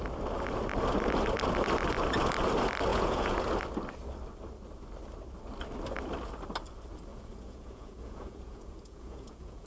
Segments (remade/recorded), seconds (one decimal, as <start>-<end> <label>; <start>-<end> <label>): 0.0-2.9 recorded; 2.9-3.4 remade; 3.4-7.1 recorded; 7.1-9.7 remade